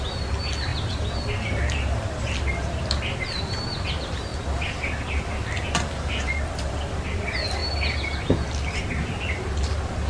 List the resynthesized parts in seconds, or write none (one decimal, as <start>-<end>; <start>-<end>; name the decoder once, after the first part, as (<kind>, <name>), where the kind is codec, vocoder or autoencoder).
none

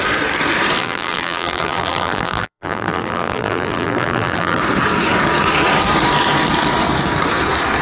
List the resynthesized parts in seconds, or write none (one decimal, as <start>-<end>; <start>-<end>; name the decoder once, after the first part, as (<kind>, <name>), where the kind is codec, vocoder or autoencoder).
0.8-4.6 (vocoder, BigVGAN v2)

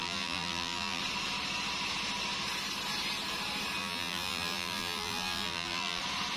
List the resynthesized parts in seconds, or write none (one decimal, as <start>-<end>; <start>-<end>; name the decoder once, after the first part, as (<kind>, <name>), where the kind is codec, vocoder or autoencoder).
0.0-1.0 (vocoder, BigVGAN v2); 3.8-6.0

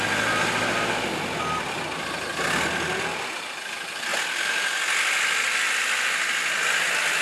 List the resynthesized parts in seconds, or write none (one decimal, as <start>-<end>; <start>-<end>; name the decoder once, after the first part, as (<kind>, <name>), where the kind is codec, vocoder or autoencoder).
none

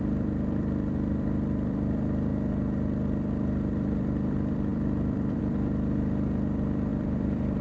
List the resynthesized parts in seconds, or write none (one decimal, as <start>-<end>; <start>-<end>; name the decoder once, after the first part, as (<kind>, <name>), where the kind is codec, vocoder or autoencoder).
0.0-2.3 (vocoder, BigVGAN v2); 3.7-7.6

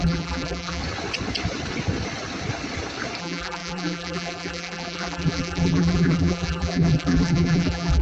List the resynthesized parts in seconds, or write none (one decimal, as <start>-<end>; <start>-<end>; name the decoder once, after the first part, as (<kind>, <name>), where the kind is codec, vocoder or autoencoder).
0.0-0.8 (vocoder, BigVGAN v2); 3.2-8.0

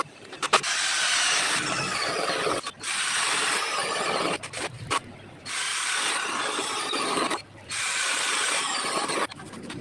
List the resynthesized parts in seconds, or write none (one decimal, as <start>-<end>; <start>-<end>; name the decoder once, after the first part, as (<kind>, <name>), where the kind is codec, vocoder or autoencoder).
0.0-1.9 (vocoder, BigVGAN v2); 3.0-5.7; 7.7-9.8

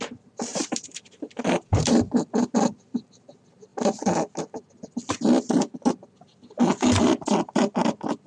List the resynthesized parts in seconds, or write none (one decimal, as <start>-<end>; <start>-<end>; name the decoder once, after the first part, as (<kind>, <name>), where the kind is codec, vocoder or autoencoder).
0.5-2.5 (vocoder, BigVGAN v2)